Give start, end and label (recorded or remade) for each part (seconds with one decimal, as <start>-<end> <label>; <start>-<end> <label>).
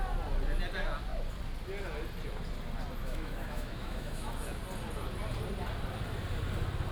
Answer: 0.0-3.0 recorded; 3.0-4.3 remade; 4.3-6.9 recorded